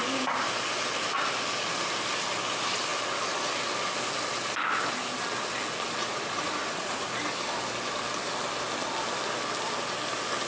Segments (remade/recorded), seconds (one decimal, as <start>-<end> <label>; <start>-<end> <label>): 0.0-6.0 recorded; 6.0-7.2 remade; 7.2-10.5 recorded